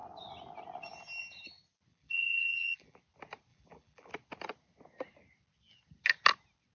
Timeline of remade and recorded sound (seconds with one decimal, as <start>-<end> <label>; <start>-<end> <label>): 0.0-1.9 recorded; 1.9-3.0 remade; 3.0-3.5 recorded; 3.5-4.1 remade; 4.1-6.7 recorded

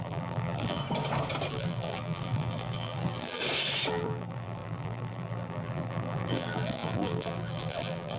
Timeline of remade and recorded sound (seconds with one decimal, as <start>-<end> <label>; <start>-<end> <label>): 0.0-0.8 remade; 0.8-1.5 recorded; 1.5-3.4 remade; 3.4-3.9 recorded; 3.9-8.2 remade

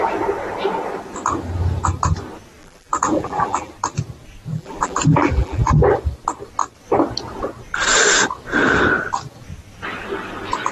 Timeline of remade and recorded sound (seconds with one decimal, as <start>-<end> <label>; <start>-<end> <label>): 0.0-2.6 recorded; 2.6-3.7 remade; 3.7-4.5 recorded; 4.5-5.7 remade; 5.7-10.7 recorded